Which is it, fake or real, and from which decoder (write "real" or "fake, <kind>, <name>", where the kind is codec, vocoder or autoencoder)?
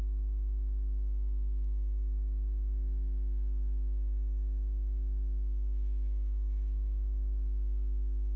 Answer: fake, autoencoder, DAC-VAE